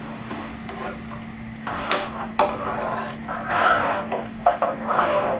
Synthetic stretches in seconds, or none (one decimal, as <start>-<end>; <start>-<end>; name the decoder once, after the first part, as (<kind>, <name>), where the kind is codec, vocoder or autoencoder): 0.0-0.5 (codec, DAC); 1.6-2.3; 3.5-5.4